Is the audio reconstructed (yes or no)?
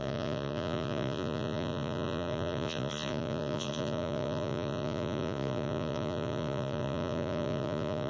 yes